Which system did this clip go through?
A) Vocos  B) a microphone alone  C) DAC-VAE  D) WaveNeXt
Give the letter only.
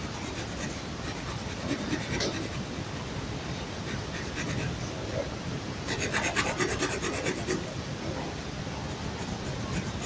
B